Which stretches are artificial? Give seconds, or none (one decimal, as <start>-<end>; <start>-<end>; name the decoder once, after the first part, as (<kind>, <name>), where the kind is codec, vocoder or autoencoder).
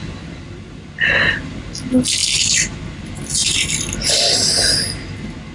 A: 0.0-1.7 (vocoder, BigVGAN v2); 2.2-2.8; 3.4-4.6